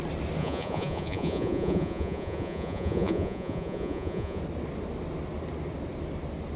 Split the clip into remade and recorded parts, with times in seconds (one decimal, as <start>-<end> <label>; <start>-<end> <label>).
0.0-0.4 recorded; 0.4-4.4 remade; 4.4-6.6 recorded